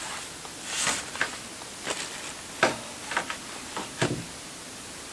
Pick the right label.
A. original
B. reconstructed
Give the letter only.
A